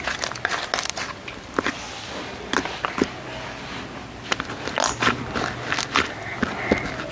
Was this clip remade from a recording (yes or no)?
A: no